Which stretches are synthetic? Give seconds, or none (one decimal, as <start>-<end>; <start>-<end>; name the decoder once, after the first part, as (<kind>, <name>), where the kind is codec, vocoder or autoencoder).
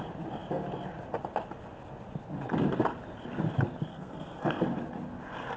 3.9-4.6 (codec, SNAC)